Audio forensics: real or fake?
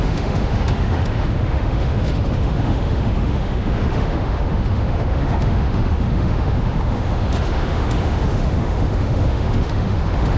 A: fake